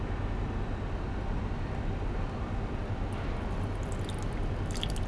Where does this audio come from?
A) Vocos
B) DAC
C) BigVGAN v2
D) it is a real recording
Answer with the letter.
D